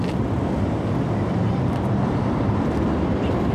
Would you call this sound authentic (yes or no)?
no